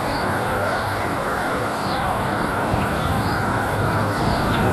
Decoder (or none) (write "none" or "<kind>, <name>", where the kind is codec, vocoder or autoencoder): codec, DAC